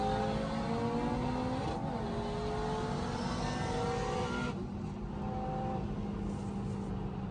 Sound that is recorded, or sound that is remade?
recorded